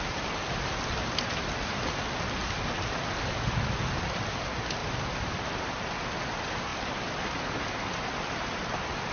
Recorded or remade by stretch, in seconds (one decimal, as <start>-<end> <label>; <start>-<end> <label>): 0.0-2.4 recorded; 2.4-4.3 remade; 4.3-4.8 recorded; 4.8-6.1 remade; 6.1-6.7 recorded; 6.7-9.1 remade